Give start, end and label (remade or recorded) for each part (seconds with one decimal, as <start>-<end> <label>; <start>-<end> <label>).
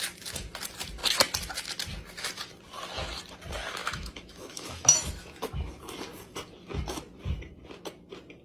0.0-3.8 recorded; 3.8-5.7 remade; 5.7-8.4 recorded